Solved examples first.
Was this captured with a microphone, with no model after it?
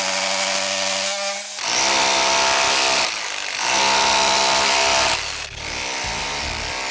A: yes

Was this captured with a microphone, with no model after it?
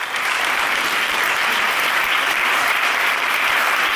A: no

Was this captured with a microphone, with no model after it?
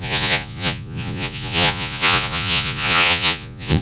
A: no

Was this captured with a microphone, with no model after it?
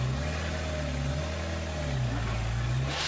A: yes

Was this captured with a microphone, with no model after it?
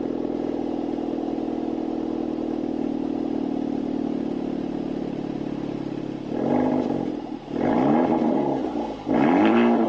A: yes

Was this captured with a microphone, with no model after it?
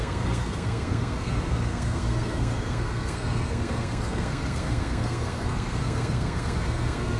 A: no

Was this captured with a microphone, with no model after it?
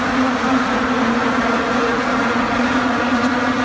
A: no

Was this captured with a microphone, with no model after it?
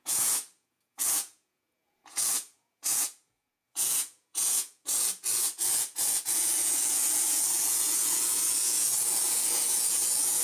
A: no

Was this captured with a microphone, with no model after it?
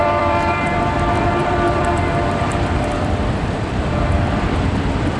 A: no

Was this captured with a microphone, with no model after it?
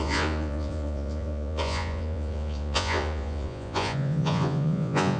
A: no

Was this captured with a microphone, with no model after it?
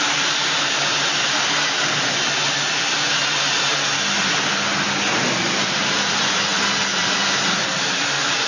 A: yes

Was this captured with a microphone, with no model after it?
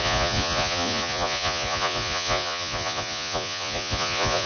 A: no